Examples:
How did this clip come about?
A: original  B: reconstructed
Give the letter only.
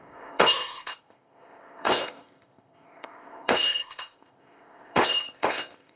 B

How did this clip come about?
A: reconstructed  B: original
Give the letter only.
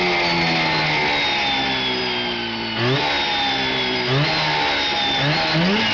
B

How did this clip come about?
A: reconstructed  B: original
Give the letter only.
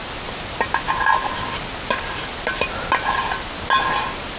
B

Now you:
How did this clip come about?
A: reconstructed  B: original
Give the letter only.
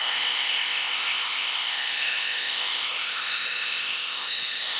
A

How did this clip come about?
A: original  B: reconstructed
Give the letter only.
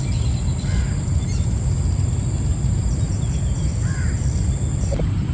A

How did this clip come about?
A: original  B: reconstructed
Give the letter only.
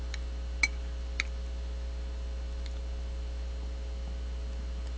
A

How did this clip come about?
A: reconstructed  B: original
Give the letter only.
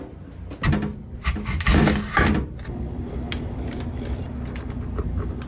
B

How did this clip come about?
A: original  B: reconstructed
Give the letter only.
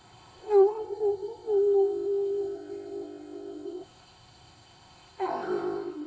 B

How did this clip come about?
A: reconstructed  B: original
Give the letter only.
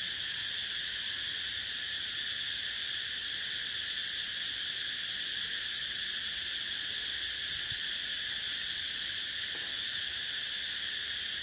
B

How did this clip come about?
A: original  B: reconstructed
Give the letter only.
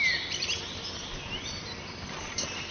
A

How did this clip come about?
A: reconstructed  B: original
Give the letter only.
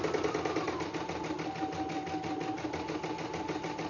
B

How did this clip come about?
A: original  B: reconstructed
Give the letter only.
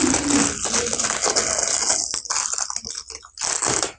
A